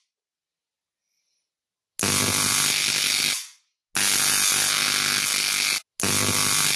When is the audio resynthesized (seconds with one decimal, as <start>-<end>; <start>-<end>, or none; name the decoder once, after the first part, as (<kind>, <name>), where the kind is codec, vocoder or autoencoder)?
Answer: none